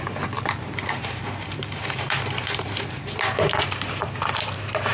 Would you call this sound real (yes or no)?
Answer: no